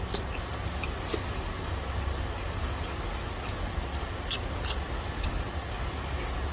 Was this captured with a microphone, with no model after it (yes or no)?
yes